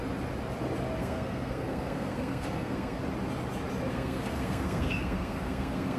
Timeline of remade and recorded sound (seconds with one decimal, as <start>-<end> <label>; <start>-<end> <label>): 0.0-1.0 recorded; 1.0-3.0 remade; 3.0-3.9 recorded; 3.9-6.0 remade